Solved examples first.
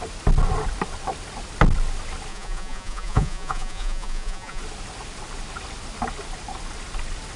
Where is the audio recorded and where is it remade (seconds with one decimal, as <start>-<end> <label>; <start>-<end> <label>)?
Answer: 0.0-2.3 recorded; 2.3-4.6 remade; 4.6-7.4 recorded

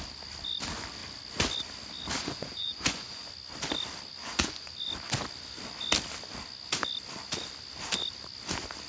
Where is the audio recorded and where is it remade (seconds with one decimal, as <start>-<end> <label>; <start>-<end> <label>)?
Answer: 0.0-2.2 recorded; 2.2-3.3 remade; 3.3-4.2 recorded; 4.2-4.7 remade; 4.7-8.9 recorded

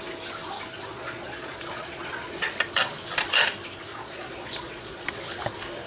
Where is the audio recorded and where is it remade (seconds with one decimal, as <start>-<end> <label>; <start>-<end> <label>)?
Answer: 0.0-0.9 recorded; 0.9-2.5 remade; 2.5-3.9 recorded; 3.9-5.2 remade; 5.2-5.9 recorded